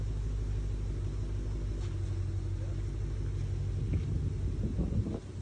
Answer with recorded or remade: recorded